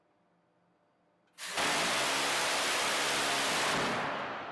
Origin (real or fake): real